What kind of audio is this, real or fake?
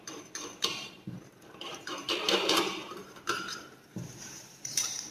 fake